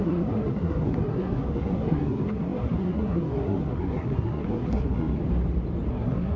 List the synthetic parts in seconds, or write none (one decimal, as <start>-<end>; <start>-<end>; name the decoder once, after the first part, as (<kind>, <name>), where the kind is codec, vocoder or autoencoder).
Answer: 0.0-5.2 (codec, SNAC); 5.9-6.4